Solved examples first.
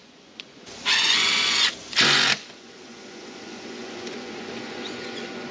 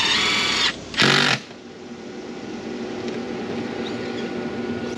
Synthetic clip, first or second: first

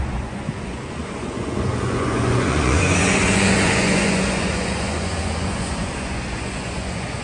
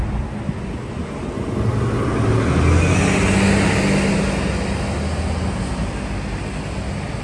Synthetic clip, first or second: first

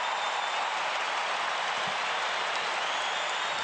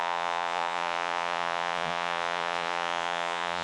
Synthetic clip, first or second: second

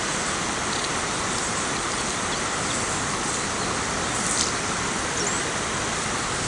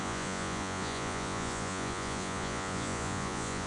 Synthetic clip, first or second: second